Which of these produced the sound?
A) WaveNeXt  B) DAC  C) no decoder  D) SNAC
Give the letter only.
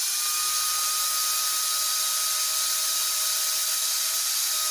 C